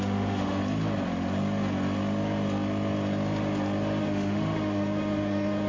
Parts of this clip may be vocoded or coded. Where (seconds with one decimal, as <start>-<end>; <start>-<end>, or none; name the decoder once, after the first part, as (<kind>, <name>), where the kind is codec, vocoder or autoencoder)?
0.0-0.6 (autoencoder, DAC-VAE); 4.0-5.7